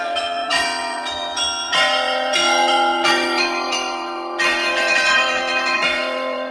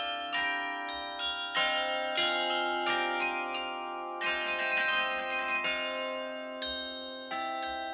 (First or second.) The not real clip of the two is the first